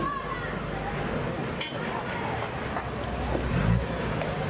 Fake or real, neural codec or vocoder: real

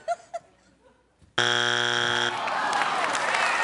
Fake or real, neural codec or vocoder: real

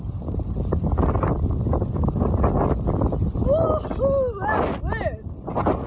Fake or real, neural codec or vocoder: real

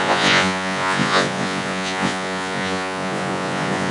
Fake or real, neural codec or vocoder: fake, vocoder, Vocos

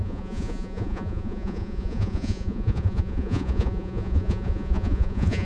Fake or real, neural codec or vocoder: fake, vocoder, Vocos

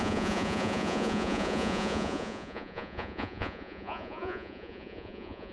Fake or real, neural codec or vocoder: fake, vocoder, Vocos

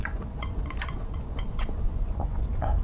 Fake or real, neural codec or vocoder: fake, vocoder, Vocos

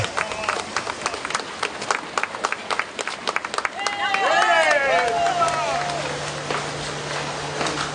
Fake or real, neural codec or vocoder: real